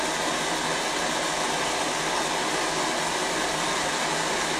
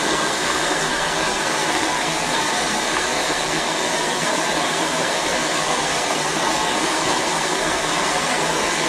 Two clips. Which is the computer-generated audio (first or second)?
second